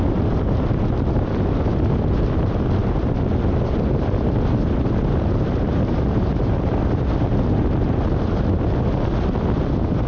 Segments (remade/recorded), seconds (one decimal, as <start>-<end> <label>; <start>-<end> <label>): 0.0-10.1 recorded